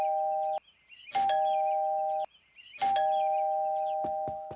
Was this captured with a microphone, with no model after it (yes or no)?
yes